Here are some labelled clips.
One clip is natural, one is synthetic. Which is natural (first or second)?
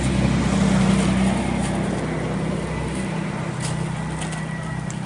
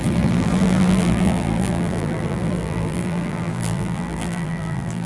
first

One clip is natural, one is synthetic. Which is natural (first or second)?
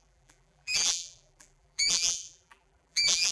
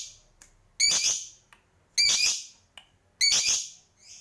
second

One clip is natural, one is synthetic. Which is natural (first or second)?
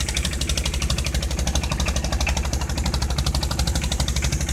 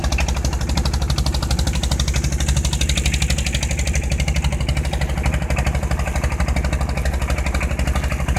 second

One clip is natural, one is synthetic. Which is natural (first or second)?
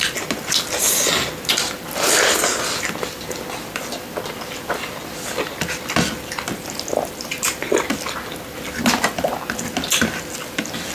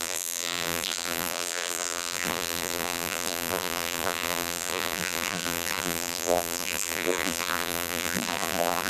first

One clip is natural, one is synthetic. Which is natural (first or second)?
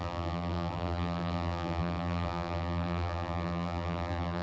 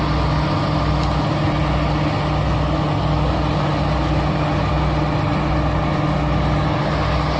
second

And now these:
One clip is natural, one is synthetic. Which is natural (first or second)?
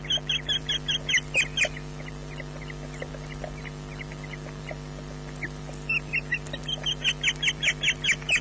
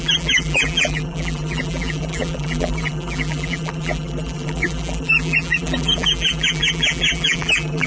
first